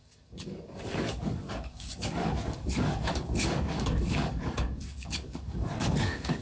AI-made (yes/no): yes